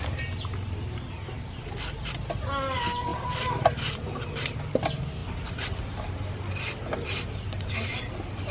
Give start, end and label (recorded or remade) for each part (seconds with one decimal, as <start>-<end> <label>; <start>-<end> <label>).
0.0-3.1 recorded; 3.1-4.1 remade; 4.1-8.5 recorded